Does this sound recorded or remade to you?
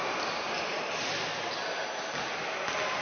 recorded